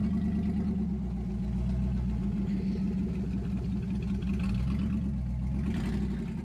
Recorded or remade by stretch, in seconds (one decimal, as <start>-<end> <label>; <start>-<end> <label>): 0.0-6.4 recorded